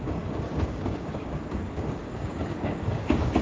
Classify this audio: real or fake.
fake